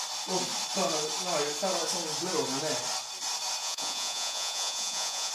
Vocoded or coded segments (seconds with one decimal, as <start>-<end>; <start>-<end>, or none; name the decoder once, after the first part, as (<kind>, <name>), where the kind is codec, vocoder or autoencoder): 3.6-5.3 (vocoder, Vocos)